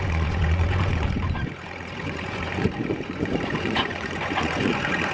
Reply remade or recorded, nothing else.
remade